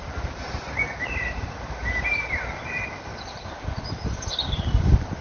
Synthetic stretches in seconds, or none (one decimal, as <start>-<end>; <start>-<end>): none

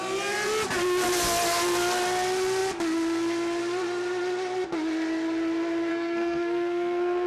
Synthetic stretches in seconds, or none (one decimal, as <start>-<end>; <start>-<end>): 5.9-7.3